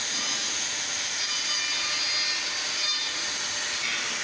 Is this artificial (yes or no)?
no